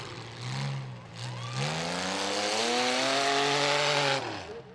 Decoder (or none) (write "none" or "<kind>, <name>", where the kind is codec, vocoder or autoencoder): none